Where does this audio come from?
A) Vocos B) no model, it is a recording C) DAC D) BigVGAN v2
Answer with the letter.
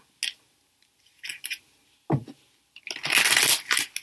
B